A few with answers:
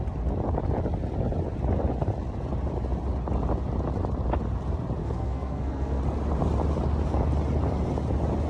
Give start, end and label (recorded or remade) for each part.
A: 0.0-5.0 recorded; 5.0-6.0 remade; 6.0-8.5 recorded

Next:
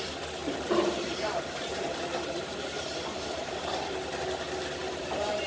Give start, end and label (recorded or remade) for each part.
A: 0.0-0.4 recorded; 0.4-3.7 remade; 3.7-4.8 recorded; 4.8-5.5 remade

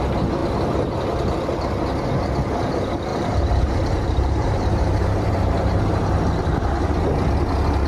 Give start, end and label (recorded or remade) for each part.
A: 0.0-3.1 recorded; 3.1-6.2 remade; 6.2-7.9 recorded